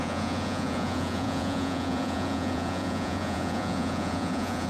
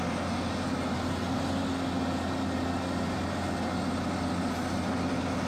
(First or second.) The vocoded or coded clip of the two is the first